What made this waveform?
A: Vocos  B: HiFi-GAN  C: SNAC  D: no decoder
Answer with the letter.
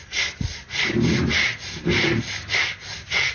D